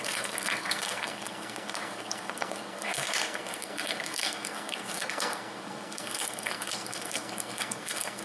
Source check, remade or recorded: remade